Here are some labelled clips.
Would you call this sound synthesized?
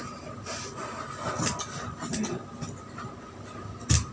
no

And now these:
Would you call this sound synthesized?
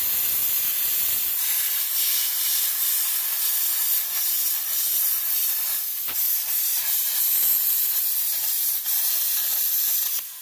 no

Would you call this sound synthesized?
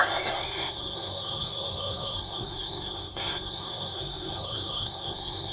yes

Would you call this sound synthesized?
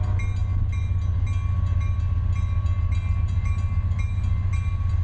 no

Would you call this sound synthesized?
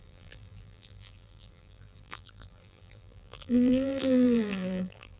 yes